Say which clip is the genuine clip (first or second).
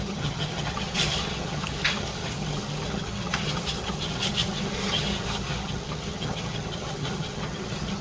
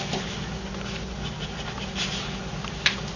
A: second